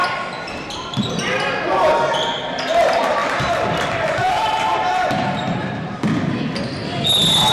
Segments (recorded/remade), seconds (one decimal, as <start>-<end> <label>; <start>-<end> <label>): 0.0-3.2 recorded; 3.2-6.3 remade; 6.3-7.5 recorded